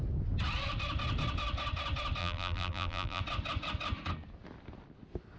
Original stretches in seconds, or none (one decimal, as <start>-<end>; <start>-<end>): 0.0-2.2; 3.2-5.4